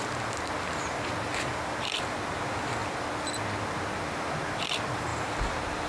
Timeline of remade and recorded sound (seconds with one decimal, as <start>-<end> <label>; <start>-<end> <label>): 0.0-5.9 recorded